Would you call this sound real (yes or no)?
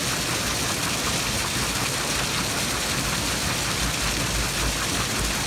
yes